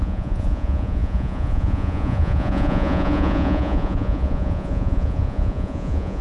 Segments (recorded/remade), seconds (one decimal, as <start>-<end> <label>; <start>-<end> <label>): 0.0-6.2 remade

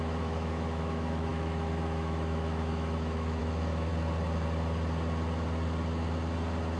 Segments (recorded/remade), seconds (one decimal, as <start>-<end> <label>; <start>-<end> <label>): 0.0-3.9 remade; 3.9-6.8 recorded

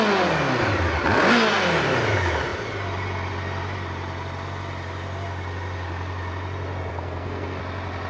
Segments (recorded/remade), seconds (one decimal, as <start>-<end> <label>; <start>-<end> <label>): 0.0-6.9 recorded; 6.9-7.6 remade; 7.6-8.1 recorded

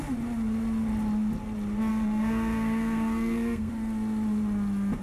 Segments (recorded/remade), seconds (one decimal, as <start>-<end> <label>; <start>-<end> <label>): 0.0-1.9 recorded; 1.9-3.7 remade; 3.7-5.0 recorded

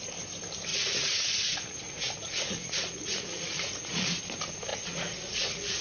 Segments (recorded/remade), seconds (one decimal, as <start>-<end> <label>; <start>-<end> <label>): 0.0-0.7 recorded; 0.7-4.2 remade; 4.2-4.7 recorded; 4.7-5.8 remade

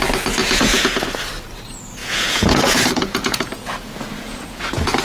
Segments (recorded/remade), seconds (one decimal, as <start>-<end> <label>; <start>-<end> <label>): 0.0-0.4 recorded; 0.4-1.0 remade; 1.0-2.0 recorded; 2.0-5.0 remade